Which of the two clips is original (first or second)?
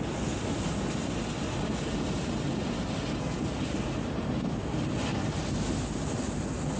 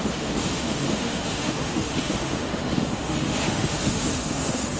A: first